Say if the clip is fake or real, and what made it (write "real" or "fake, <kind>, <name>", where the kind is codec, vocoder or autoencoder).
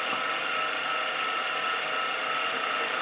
real